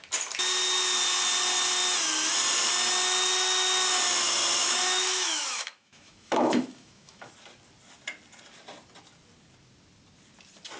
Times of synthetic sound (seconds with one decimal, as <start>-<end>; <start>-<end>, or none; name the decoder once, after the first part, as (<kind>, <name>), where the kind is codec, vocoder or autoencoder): 4.6-7.3 (autoencoder, DAC-VAE)